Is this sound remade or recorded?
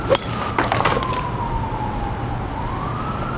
recorded